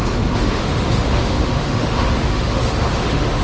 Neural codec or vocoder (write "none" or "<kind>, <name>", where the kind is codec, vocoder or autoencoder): autoencoder, DAC-VAE